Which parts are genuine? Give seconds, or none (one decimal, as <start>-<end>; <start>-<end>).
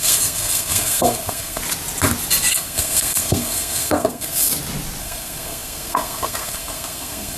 1.6-2.5; 4.5-5.0